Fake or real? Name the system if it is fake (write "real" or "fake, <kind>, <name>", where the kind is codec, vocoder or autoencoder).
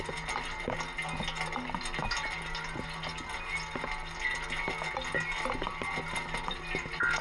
real